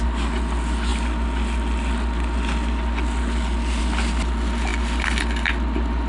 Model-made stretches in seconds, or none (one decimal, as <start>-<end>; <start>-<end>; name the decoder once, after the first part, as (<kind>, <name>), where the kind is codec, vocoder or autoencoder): none